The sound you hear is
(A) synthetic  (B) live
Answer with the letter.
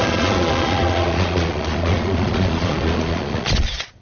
A